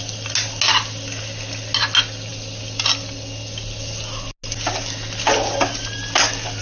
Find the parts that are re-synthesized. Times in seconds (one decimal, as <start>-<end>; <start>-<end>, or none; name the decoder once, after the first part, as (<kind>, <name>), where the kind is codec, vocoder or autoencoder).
none